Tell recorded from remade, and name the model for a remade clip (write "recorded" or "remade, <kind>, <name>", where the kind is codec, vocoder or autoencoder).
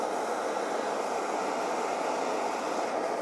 recorded